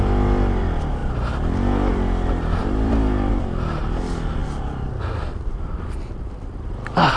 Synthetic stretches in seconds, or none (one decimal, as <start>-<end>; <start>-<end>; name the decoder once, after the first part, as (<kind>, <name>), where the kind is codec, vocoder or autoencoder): 2.6-3.3 (vocoder, BigVGAN v2)